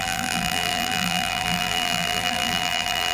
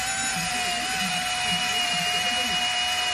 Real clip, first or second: second